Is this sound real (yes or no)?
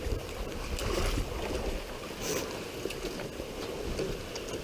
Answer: yes